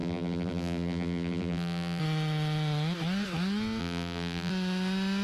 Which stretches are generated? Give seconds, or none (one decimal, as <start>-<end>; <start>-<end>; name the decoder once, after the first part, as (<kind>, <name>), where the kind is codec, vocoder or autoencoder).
0.0-2.0 (vocoder, BigVGAN v2); 3.8-4.5